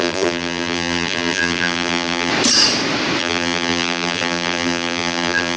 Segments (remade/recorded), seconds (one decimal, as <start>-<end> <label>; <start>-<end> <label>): 0.0-2.3 remade; 2.3-3.2 recorded; 3.2-5.6 remade